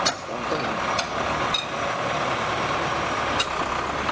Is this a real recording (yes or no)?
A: yes